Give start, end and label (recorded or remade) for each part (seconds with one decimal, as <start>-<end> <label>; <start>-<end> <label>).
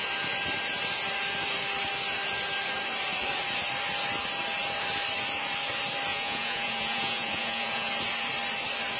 0.0-6.1 recorded; 6.1-7.9 remade; 7.9-9.0 recorded